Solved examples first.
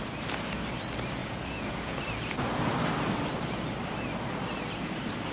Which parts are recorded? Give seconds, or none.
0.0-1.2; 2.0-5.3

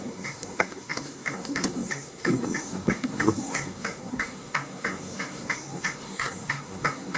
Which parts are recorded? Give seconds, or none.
none